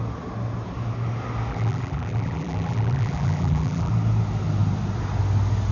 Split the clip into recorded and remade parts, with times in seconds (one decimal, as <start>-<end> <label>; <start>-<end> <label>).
0.0-1.5 recorded; 1.5-3.9 remade; 3.9-5.7 recorded

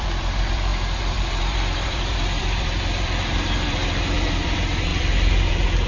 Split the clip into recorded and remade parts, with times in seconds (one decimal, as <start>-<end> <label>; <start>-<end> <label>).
0.0-5.9 remade

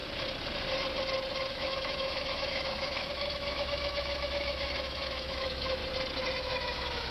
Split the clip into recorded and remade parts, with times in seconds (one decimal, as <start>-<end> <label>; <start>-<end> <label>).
0.0-1.5 recorded; 1.5-5.8 remade; 5.8-6.4 recorded; 6.4-7.1 remade

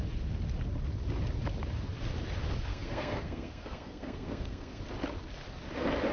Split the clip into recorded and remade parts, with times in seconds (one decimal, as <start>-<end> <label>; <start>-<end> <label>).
0.0-2.7 recorded; 2.7-4.8 remade; 4.8-6.1 recorded

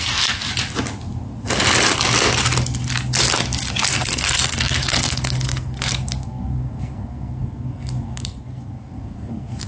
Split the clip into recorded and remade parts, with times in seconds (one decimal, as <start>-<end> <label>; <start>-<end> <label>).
0.0-0.4 remade; 0.4-3.9 recorded; 3.9-9.7 remade